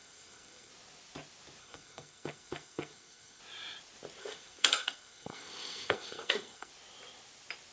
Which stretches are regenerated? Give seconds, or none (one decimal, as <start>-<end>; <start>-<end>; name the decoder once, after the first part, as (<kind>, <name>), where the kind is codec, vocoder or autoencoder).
0.0-0.7 (codec, SNAC); 1.6-3.4; 4.2-6.7